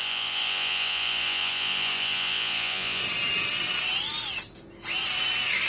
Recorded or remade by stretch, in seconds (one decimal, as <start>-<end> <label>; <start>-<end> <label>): 0.0-3.0 remade; 3.0-5.7 recorded